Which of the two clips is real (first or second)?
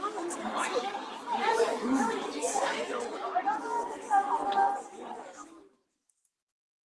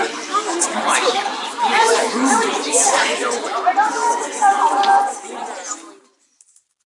second